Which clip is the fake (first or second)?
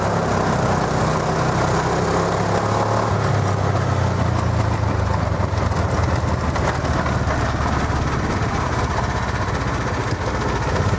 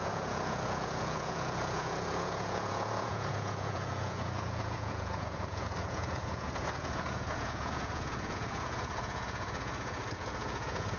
second